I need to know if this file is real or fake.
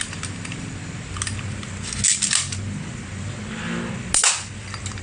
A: real